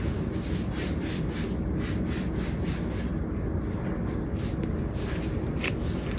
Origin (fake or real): real